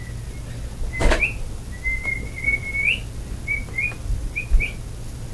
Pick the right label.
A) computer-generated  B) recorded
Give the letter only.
B